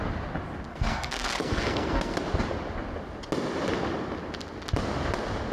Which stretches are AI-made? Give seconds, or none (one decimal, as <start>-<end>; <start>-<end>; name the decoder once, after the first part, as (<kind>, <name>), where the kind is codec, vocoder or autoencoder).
0.7-2.2 (codec, SNAC)